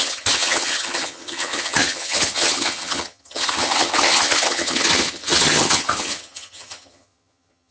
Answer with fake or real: fake